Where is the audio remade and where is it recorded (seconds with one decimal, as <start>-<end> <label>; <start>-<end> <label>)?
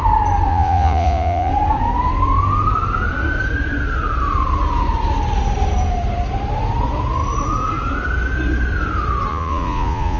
0.0-0.5 recorded; 0.5-1.5 remade; 1.5-9.3 recorded; 9.3-10.2 remade